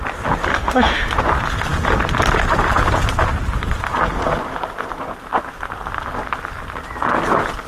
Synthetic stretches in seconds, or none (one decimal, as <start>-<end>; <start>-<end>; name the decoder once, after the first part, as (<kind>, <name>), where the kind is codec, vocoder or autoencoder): 0.5-1.1 (autoencoder, DAC-VAE)